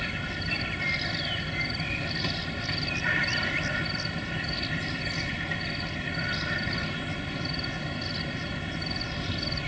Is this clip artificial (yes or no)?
no